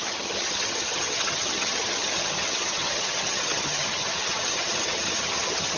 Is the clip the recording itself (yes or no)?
no